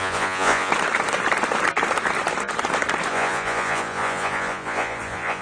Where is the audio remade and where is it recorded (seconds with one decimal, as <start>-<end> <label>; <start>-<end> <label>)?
0.0-0.7 remade; 0.7-3.1 recorded; 3.1-5.4 remade